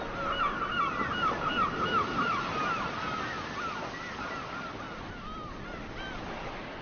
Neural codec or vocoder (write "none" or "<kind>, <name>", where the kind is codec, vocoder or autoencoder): none